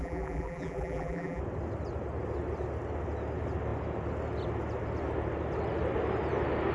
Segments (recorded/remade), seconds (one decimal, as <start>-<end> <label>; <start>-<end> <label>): 0.0-1.4 remade; 1.4-6.7 recorded